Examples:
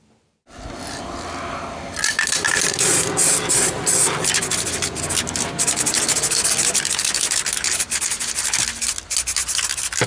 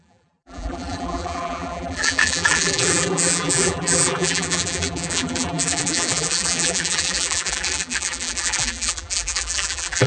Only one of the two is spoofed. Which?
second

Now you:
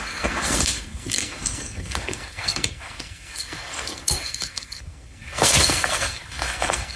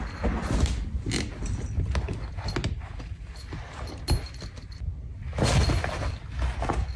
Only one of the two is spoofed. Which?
first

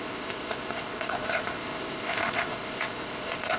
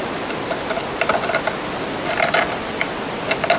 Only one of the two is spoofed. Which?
first